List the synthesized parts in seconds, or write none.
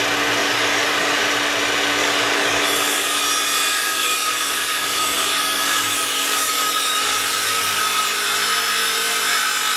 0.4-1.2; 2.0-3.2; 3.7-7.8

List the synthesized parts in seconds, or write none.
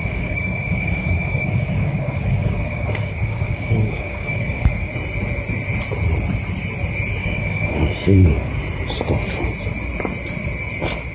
0.0-4.9; 7.2-8.5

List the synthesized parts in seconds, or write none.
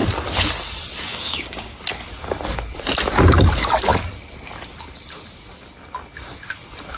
1.1-1.8